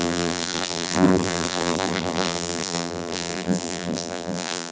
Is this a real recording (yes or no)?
no